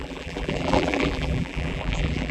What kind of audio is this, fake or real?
fake